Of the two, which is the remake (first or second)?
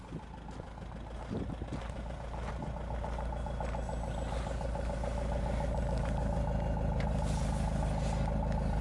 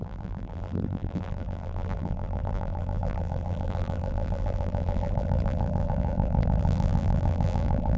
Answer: second